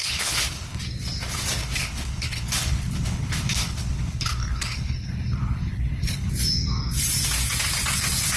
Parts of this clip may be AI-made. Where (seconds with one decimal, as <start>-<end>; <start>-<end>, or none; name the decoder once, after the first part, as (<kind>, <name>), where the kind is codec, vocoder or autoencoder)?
0.0-0.8 (codec, HILCodec); 1.6-6.3